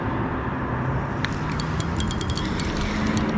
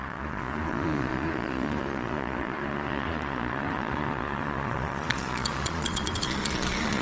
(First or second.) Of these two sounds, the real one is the first